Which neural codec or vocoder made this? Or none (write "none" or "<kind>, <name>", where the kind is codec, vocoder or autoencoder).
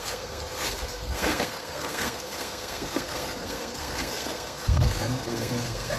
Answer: codec, SNAC